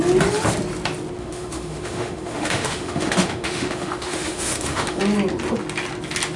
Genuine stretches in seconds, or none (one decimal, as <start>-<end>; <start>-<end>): 0.0-1.2; 5.0-6.4